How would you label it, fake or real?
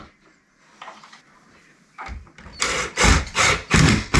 real